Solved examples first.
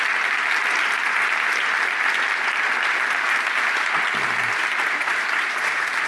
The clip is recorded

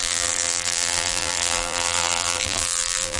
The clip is remade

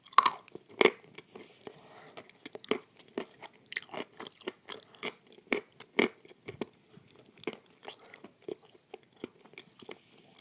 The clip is recorded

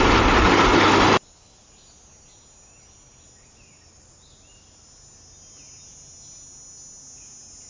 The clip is recorded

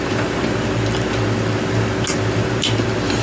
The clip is recorded